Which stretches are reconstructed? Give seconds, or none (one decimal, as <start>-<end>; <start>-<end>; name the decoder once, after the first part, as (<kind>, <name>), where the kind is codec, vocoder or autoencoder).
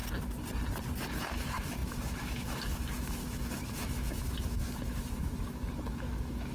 1.2-6.5 (autoencoder, DAC-VAE)